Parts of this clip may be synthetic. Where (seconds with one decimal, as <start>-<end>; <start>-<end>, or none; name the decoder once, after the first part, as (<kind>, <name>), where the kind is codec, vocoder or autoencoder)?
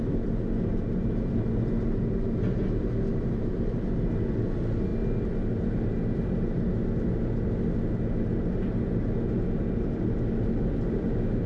none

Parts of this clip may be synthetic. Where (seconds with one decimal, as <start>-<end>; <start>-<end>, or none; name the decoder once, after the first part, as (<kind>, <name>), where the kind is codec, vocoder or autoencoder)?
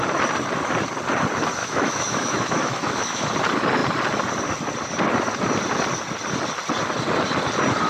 1.6-3.3 (autoencoder, DAC-VAE)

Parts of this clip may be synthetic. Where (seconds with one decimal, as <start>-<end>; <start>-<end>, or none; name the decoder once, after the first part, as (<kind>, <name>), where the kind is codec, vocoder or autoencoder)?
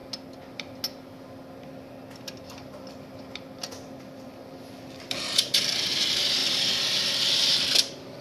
2.4-8.2 (vocoder, BigVGAN v2)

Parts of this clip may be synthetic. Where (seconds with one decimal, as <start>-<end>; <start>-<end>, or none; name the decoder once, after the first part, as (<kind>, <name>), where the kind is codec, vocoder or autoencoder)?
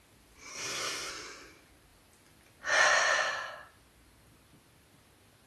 0.5-1.1 (codec, SNAC)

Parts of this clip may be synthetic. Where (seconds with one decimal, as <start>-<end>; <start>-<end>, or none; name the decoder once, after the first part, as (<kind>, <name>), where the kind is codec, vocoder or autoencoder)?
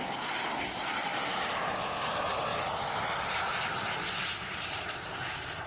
none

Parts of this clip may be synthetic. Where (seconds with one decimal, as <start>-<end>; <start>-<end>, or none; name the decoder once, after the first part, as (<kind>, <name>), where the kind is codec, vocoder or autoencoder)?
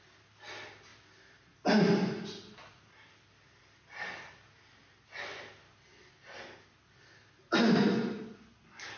none